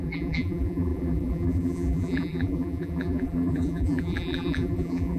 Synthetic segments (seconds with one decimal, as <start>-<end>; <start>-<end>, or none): 0.0-5.2